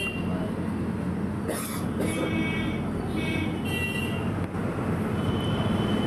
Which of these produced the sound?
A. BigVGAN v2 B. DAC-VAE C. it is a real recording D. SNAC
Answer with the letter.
C